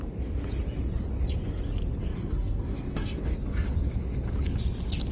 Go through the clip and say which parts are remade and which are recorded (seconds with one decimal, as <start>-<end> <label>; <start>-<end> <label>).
0.0-2.1 recorded; 2.1-3.3 remade; 3.3-5.1 recorded